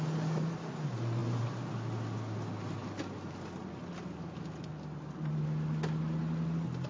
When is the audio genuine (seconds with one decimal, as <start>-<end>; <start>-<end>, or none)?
0.0-6.9